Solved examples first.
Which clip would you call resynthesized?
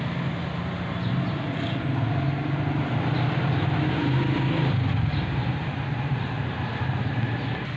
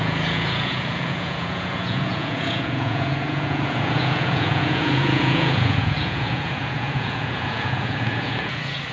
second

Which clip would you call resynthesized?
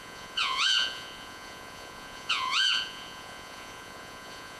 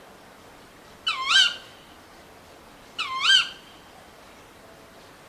first